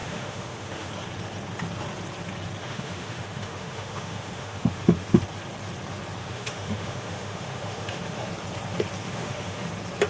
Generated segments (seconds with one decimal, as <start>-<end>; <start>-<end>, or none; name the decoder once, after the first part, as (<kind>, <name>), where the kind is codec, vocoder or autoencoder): 0.0-0.9 (autoencoder, DAC-VAE); 2.6-5.2; 6.2-8.3; 9.0-9.7